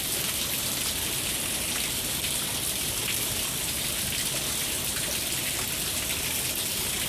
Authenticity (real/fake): real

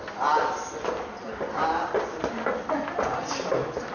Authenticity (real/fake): real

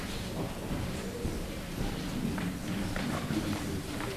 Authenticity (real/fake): fake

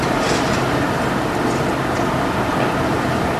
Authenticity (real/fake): fake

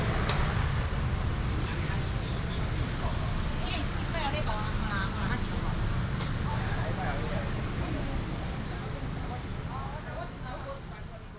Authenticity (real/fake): real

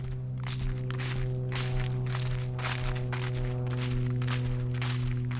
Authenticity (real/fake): real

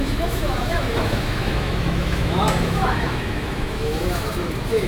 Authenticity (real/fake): fake